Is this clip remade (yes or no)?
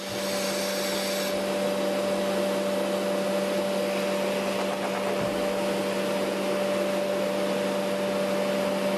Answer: no